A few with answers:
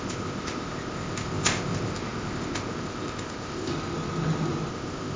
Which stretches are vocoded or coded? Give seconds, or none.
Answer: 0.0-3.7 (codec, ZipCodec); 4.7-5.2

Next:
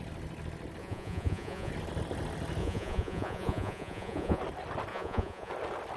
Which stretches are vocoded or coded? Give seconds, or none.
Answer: 0.8-1.7 (vocoder, Vocos); 2.6-4.4; 4.9-5.5